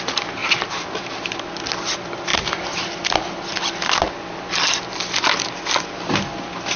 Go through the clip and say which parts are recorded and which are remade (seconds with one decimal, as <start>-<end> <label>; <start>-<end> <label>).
0.0-0.4 recorded; 0.4-1.1 remade; 1.1-2.3 recorded; 2.3-2.9 remade; 2.9-6.8 recorded